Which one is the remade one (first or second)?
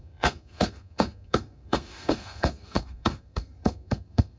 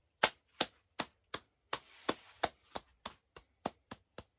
first